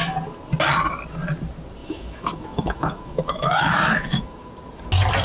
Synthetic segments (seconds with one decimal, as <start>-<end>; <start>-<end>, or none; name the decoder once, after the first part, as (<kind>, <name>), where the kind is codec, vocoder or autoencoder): 1.8-4.5 (autoencoder, DAC-VAE)